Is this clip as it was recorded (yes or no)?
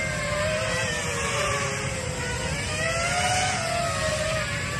yes